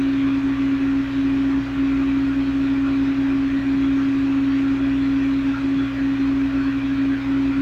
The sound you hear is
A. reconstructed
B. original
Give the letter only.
B